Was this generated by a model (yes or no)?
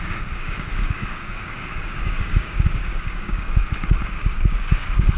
yes